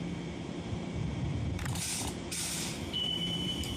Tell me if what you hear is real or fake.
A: fake